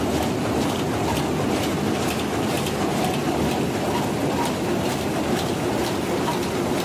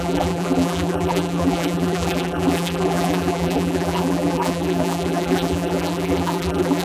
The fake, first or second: second